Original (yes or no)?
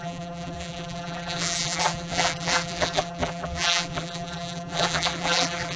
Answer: no